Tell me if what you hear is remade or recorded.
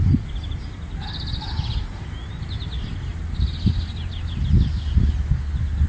recorded